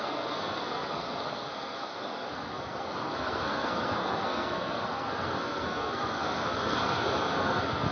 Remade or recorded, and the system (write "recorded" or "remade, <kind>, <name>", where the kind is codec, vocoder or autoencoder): remade, codec, SNAC